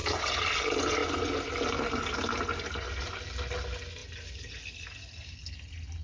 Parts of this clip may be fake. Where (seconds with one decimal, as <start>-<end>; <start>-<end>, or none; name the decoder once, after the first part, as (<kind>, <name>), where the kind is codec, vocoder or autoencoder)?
none